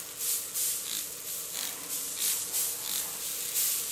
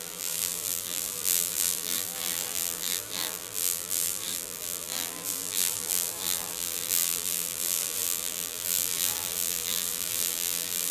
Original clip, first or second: first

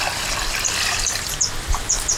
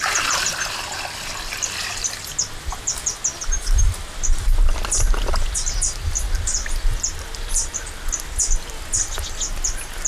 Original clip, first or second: second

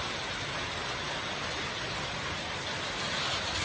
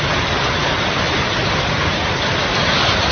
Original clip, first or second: first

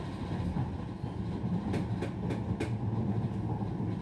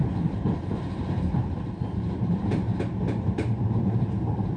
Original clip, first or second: first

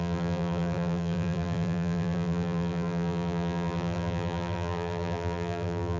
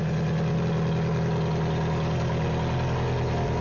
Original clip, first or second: second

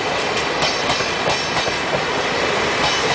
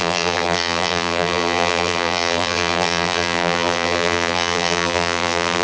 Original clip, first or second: first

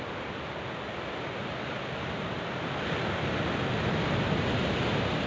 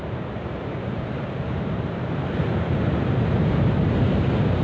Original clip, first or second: first